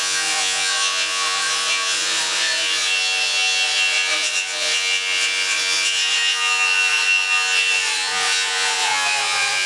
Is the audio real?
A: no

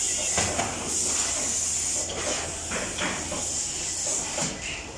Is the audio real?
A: yes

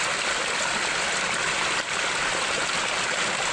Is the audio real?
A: yes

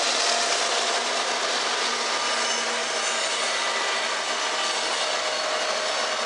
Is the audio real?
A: yes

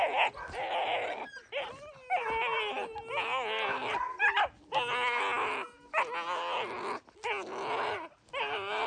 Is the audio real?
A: yes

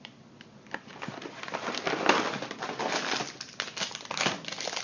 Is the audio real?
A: yes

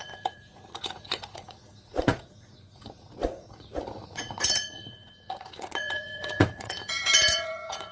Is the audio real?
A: no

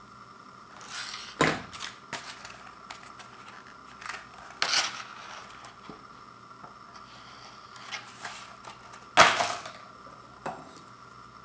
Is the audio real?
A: yes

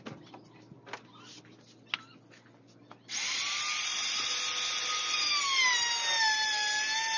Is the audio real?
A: yes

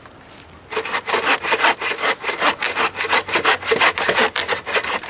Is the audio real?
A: yes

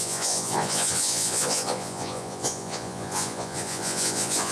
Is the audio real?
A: no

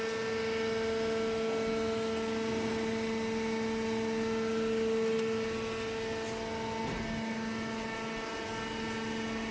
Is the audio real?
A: yes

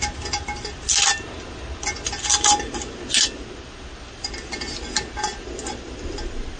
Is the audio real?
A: yes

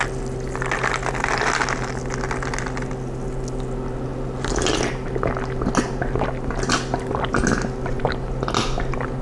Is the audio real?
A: yes